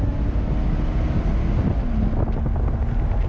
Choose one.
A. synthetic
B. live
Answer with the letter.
B